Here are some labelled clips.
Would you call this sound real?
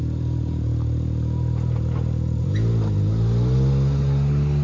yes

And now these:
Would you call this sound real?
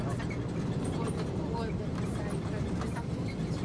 yes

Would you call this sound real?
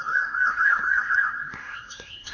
no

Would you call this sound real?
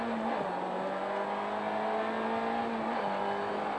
yes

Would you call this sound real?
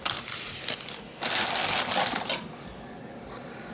yes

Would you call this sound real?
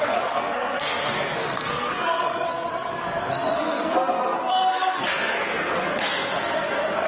no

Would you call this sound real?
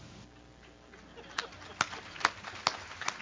yes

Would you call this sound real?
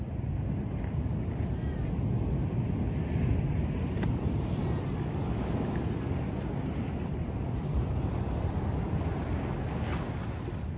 yes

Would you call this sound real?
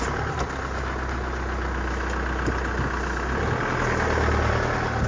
yes